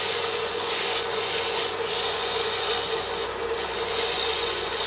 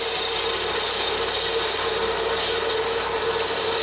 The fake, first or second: first